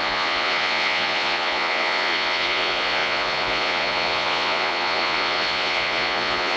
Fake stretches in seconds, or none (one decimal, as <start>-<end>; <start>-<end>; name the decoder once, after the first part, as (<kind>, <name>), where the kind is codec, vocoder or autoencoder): 0.0-6.6 (vocoder, Vocos)